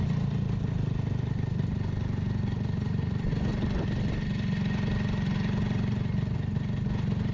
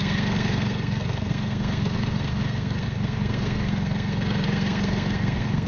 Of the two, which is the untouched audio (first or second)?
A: first